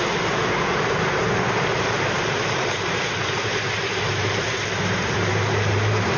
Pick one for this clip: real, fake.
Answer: fake